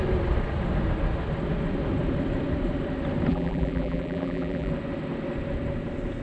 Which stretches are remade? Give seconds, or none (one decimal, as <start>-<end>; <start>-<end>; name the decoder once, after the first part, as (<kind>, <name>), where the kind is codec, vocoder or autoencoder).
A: 3.3-4.7 (vocoder, BigVGAN v2)